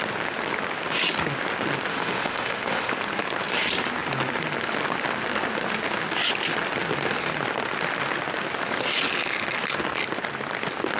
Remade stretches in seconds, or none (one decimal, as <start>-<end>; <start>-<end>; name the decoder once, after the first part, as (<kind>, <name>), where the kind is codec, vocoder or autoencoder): 1.9-2.9 (autoencoder, DAC-VAE)